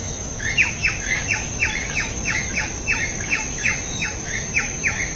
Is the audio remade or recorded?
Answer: remade